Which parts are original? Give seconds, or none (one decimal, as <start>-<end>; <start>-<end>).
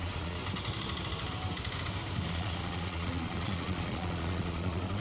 0.4-2.3